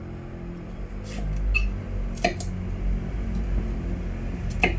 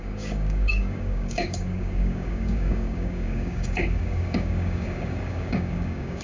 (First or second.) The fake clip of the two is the second